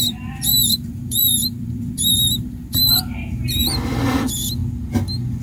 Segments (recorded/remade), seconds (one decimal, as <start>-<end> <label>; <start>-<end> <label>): 0.0-0.5 recorded; 0.5-3.7 remade; 3.7-5.4 recorded